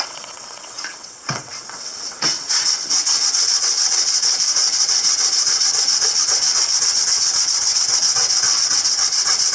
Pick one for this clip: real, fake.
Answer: fake